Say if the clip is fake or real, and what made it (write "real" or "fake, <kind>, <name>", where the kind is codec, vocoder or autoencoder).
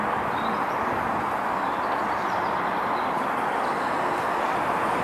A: real